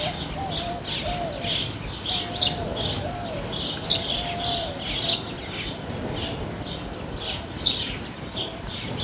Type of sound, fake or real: real